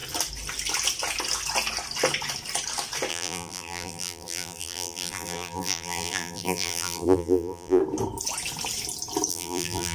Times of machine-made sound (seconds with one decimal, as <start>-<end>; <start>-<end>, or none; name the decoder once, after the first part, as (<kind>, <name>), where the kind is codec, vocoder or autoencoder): 3.1-7.8 (vocoder, BigVGAN v2); 9.3-9.9